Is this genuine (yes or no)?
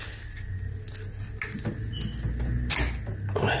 yes